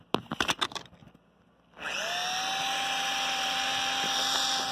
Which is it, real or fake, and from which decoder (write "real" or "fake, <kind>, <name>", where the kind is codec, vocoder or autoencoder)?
real